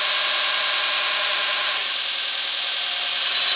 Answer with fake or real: real